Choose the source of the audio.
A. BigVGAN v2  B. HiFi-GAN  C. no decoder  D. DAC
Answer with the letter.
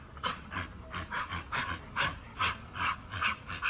C